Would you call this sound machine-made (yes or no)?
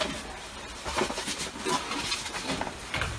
yes